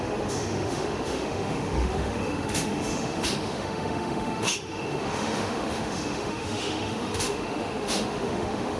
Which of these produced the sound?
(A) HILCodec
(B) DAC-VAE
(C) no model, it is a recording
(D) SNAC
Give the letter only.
B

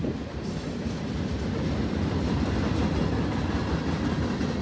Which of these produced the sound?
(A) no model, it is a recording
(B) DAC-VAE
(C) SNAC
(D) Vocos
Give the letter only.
A